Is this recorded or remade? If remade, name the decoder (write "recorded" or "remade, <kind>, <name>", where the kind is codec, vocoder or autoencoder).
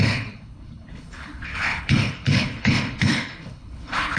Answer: remade, codec, HILCodec